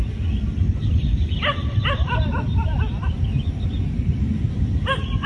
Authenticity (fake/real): fake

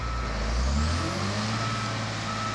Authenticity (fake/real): real